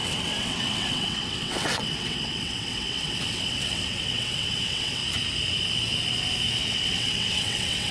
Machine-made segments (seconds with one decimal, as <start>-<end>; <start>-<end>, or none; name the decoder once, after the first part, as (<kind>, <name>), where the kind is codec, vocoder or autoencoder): 0.0-5.0 (vocoder, WaveNeXt); 6.6-7.9